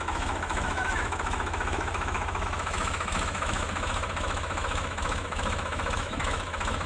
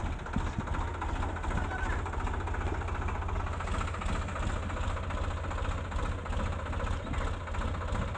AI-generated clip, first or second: first